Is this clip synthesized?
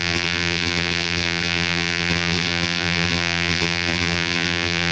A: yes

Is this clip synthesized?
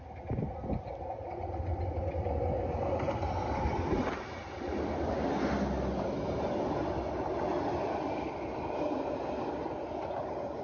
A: no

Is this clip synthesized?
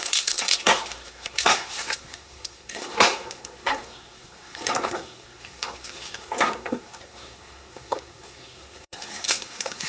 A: yes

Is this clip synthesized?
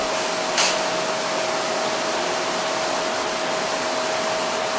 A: no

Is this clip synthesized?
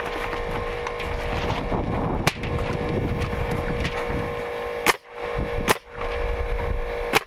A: no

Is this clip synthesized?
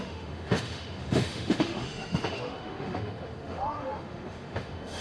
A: yes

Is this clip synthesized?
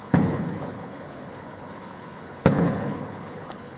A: yes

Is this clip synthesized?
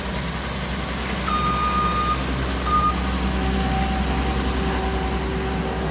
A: no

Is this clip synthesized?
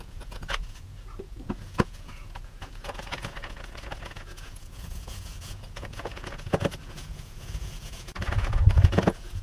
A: yes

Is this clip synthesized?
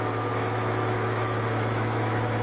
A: yes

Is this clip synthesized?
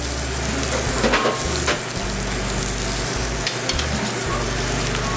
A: no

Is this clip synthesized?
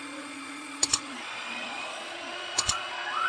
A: yes